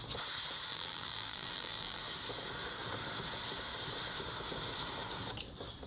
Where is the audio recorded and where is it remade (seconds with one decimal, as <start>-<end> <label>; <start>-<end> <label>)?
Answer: 0.0-0.7 recorded; 0.7-2.0 remade; 2.0-5.9 recorded